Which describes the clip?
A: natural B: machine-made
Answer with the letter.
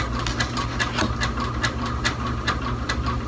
A